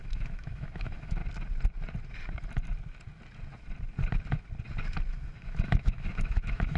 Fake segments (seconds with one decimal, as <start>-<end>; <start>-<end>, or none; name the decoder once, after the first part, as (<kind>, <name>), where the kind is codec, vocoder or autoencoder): 0.0-1.2 (autoencoder, DAC-VAE); 5.1-6.8